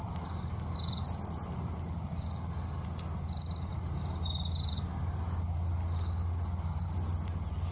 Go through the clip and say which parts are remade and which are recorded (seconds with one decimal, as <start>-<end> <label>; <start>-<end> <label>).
0.0-7.7 recorded